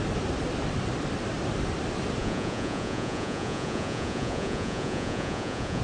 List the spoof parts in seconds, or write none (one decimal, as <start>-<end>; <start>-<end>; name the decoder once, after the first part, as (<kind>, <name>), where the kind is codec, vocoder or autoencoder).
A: 2.2-5.8 (vocoder, Vocos)